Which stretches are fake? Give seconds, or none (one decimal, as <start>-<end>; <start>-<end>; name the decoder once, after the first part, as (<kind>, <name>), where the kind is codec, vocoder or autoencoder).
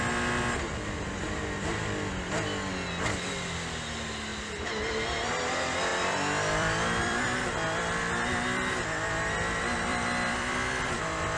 4.3-5.3 (vocoder, BigVGAN v2); 5.9-7.2; 9.9-10.7